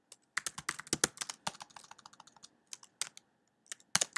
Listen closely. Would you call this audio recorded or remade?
recorded